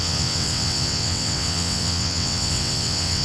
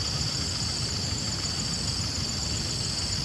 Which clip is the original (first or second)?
second